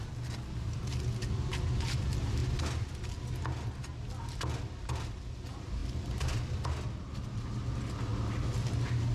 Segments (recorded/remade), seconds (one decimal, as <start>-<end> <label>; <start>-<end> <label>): 0.0-9.1 recorded